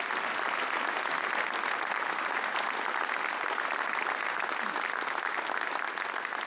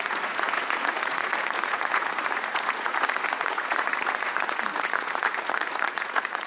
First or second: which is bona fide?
first